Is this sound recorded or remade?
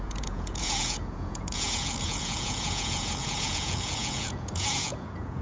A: remade